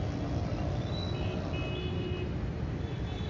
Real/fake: real